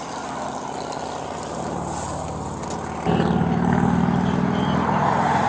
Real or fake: real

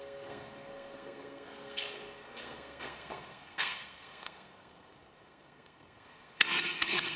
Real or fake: fake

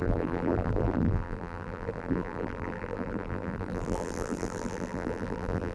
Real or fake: fake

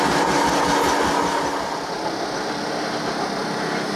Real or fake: real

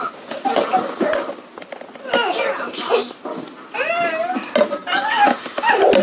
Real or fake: real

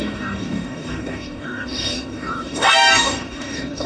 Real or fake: fake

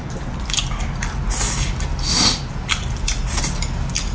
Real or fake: real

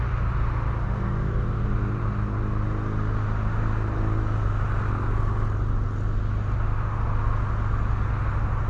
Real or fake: real